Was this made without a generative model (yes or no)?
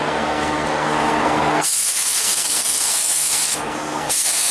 no